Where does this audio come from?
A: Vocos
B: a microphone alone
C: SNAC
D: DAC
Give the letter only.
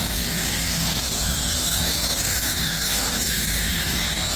D